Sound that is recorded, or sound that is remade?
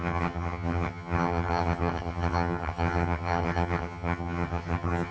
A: remade